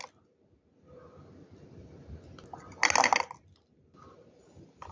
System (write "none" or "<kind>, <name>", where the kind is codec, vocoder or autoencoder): none